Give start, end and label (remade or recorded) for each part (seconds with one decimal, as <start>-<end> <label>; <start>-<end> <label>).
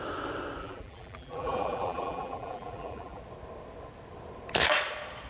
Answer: 0.0-0.6 recorded; 0.6-3.2 remade; 3.2-5.3 recorded